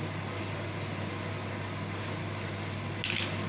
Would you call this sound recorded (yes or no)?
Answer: yes